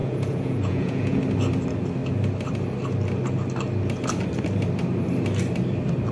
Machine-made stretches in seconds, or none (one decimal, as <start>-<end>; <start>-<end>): 0.0-1.2